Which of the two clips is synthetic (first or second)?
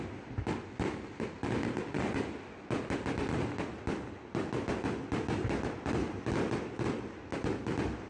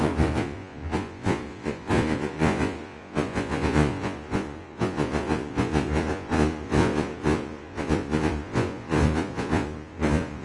second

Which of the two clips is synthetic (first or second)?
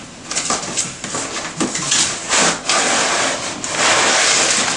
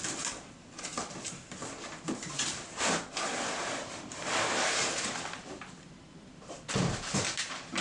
second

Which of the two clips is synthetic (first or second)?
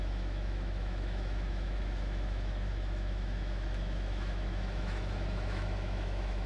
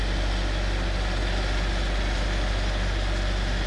first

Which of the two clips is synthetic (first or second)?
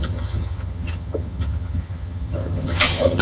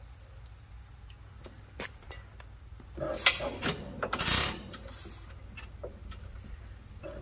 first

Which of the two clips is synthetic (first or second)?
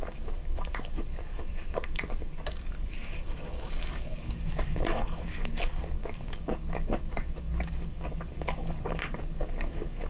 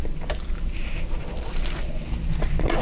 first